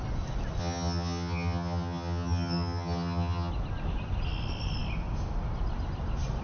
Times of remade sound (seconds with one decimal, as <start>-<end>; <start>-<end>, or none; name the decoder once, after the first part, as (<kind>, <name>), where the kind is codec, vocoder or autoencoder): 0.6-3.5 (vocoder, HiFi-GAN)